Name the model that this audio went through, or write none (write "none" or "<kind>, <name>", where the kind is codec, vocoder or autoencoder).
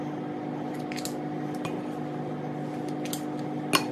none